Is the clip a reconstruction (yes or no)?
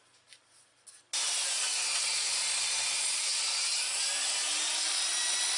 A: no